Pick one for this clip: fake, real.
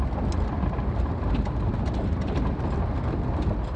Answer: real